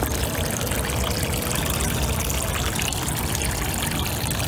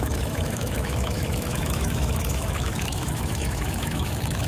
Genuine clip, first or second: first